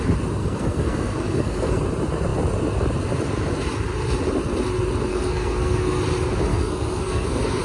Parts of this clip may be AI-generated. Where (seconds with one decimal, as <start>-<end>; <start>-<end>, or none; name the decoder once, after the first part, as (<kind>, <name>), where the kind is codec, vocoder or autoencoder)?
0.4-1.8 (codec, SNAC); 5.1-6.0; 6.5-7.6